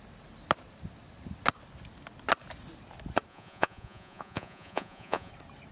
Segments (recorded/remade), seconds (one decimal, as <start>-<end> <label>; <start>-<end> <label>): 0.0-3.3 recorded; 3.3-5.3 remade; 5.3-5.7 recorded